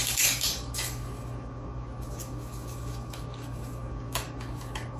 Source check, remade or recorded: remade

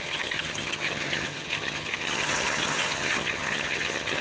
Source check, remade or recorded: remade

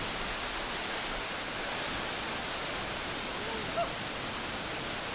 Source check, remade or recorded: recorded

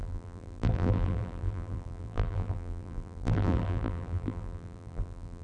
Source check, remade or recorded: remade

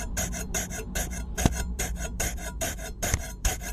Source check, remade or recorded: remade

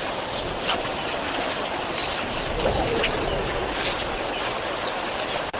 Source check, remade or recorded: recorded